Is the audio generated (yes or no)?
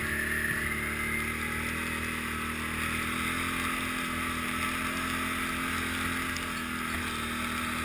no